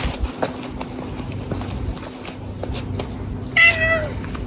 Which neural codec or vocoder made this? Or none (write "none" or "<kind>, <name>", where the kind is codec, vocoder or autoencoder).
none